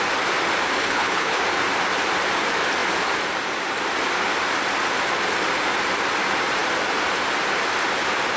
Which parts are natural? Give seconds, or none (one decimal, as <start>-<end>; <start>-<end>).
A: 0.0-0.8; 1.4-8.4